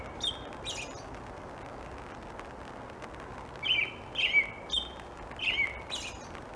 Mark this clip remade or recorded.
recorded